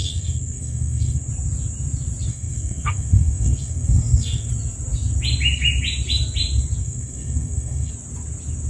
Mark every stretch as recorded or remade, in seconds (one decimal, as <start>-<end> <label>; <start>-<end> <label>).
0.0-1.3 remade; 1.3-2.3 recorded; 2.3-4.5 remade; 4.5-6.8 recorded; 6.8-7.9 remade; 7.9-8.7 recorded